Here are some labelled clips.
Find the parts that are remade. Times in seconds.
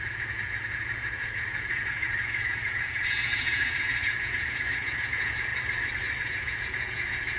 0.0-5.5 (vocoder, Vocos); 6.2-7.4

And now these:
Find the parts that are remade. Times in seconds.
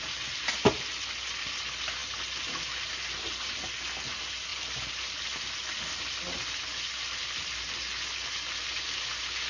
none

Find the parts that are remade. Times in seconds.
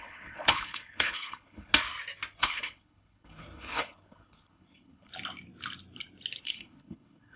0.0-1.7 (codec, HILCodec); 2.4-5.1; 6.4-7.4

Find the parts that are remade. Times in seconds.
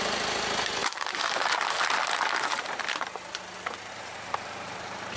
0.0-0.8 (vocoder, BigVGAN v2); 3.9-5.2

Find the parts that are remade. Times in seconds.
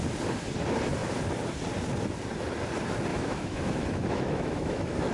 3.1-5.1 (autoencoder, DAC-VAE)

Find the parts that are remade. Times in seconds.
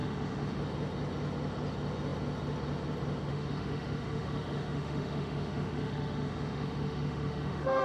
0.0-0.6 (autoencoder, DAC-VAE); 3.3-7.8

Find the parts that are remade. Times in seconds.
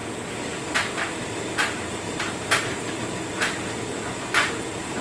3.9-4.5 (vocoder, Vocos)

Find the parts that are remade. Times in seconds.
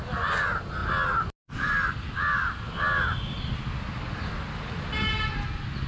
none